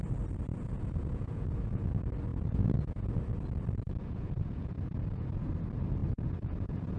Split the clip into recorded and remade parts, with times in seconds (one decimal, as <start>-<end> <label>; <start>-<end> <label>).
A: 0.0-0.5 recorded; 0.5-1.9 remade; 1.9-2.3 recorded; 2.3-3.2 remade; 3.2-4.0 recorded; 4.0-5.5 remade; 5.5-6.0 recorded; 6.0-7.0 remade